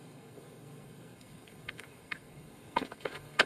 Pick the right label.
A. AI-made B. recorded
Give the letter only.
A